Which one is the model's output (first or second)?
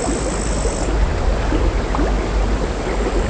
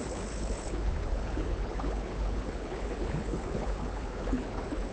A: second